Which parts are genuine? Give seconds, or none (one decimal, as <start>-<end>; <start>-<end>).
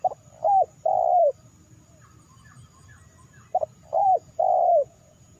0.0-4.0